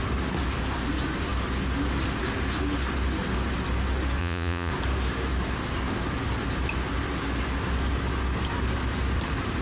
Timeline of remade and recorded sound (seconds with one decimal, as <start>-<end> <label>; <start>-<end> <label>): 0.0-4.2 recorded; 4.2-4.7 remade; 4.7-9.6 recorded